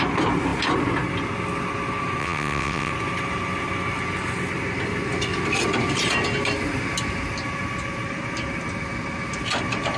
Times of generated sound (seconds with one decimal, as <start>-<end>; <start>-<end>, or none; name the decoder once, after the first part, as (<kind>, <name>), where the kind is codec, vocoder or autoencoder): 2.2-2.9 (vocoder, WaveNeXt)